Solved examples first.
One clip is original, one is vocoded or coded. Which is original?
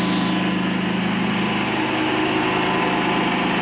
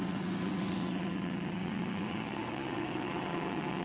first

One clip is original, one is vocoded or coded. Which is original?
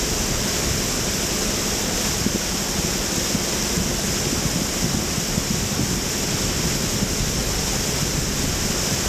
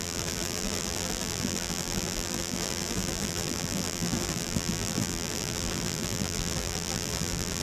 first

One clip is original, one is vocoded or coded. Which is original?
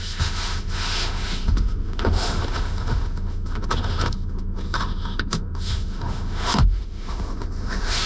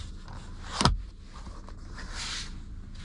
second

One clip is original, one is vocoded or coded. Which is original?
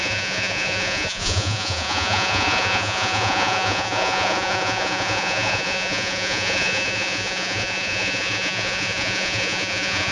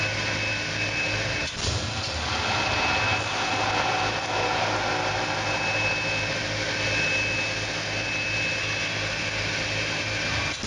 second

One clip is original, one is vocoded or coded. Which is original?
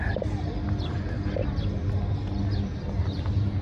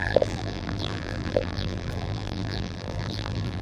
first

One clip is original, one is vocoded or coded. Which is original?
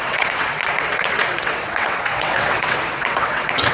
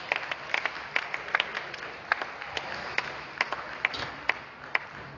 second